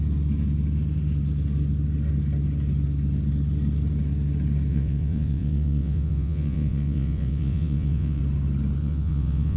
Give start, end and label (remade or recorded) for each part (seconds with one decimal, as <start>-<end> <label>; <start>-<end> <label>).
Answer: 0.0-4.7 recorded; 4.7-8.2 remade; 8.2-8.8 recorded; 8.8-9.6 remade